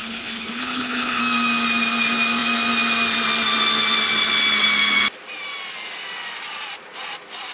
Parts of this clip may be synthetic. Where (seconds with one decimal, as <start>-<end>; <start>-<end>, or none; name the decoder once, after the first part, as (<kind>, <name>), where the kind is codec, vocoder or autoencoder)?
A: 0.0-1.2 (codec, HILCodec)